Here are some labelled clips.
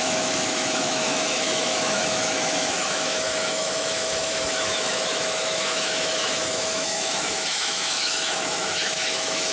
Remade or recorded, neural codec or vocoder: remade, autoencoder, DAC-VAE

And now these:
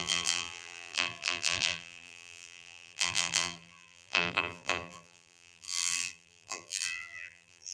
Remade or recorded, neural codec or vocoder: remade, vocoder, BigVGAN v2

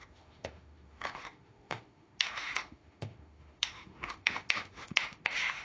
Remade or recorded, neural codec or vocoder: remade, autoencoder, DAC-VAE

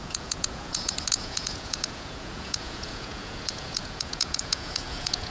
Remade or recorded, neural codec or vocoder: remade, vocoder, Vocos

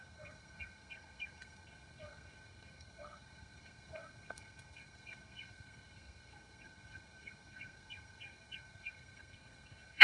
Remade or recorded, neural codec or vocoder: remade, codec, SNAC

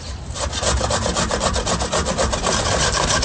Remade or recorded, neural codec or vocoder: recorded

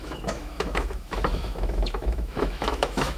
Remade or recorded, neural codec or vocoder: remade, autoencoder, DAC-VAE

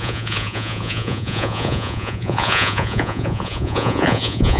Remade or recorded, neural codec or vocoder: remade, vocoder, Vocos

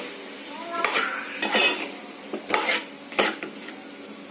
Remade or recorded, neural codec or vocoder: recorded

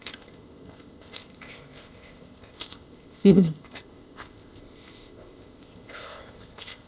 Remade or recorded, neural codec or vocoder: remade, codec, ZipCodec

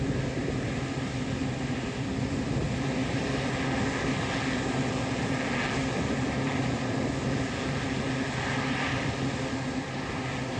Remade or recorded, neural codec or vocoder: recorded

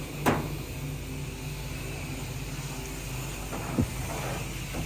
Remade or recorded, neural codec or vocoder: recorded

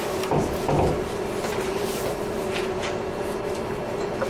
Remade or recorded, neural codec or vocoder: recorded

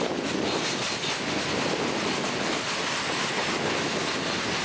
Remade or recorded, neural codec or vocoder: recorded